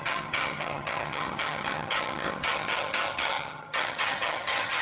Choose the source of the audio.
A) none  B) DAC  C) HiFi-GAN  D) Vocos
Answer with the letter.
C